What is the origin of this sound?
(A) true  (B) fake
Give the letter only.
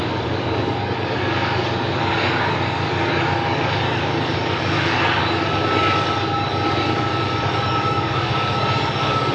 B